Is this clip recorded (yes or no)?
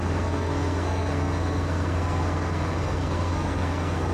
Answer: no